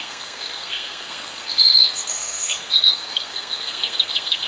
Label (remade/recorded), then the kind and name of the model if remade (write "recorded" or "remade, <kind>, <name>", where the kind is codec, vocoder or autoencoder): remade, codec, SNAC